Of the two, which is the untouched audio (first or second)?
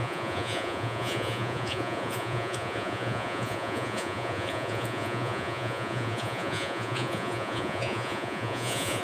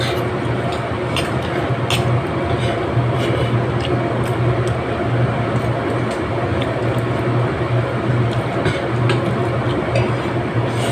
second